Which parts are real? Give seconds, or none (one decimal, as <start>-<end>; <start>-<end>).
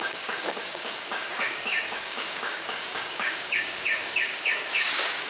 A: none